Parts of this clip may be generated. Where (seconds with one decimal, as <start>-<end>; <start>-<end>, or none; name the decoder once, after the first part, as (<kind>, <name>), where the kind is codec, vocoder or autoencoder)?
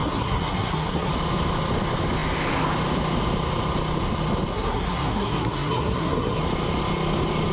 0.0-1.1 (codec, SNAC); 4.5-6.4